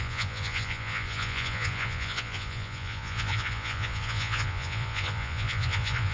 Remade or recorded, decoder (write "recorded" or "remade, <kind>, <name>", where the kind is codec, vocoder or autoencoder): remade, vocoder, Vocos